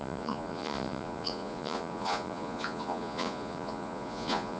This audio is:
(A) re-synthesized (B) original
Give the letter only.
A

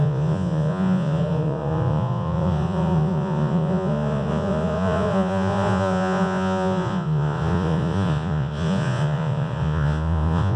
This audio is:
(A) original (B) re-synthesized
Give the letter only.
B